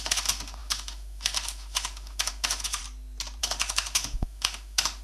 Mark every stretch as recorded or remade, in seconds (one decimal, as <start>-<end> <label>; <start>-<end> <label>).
0.0-2.8 remade; 2.8-3.4 recorded; 3.4-5.0 remade